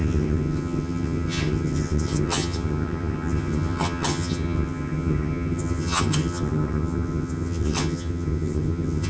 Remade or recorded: remade